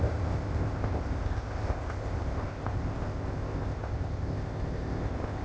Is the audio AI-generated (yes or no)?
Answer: yes